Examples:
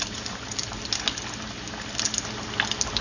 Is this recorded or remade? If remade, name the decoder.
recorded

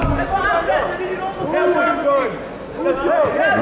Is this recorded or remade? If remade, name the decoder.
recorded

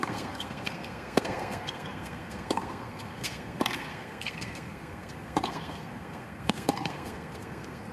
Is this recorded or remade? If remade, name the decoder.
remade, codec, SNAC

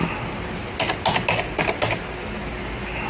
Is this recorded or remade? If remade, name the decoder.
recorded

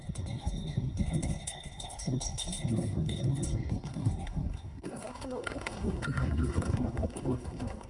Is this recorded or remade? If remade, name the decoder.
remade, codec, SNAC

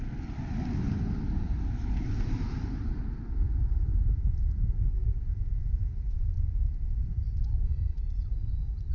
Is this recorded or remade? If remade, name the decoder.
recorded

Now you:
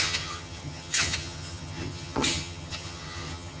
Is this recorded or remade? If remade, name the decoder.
remade, vocoder, HiFi-GAN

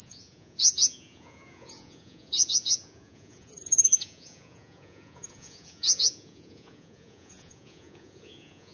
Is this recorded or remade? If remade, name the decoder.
remade, vocoder, Vocos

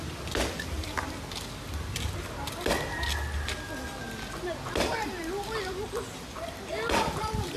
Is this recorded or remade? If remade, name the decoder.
recorded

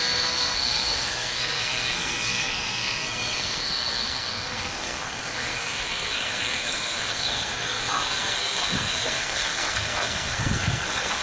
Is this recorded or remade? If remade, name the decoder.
remade, codec, SNAC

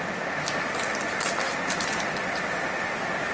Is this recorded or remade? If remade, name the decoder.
recorded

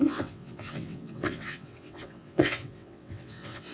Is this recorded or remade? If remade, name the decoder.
remade, vocoder, WaveNeXt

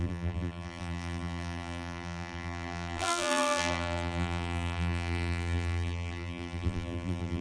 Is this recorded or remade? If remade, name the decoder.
remade, vocoder, BigVGAN v2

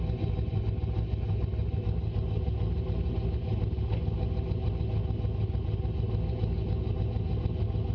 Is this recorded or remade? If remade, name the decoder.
recorded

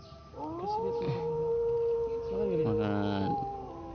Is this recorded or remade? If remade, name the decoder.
recorded